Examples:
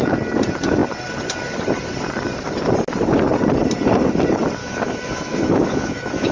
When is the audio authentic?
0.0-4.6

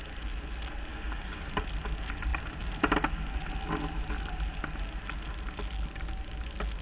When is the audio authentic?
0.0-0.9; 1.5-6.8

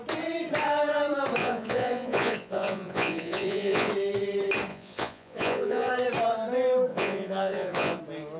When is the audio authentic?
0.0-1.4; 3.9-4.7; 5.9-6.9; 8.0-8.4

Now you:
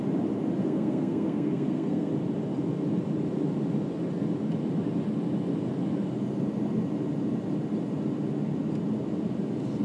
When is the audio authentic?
0.0-0.6; 2.1-9.8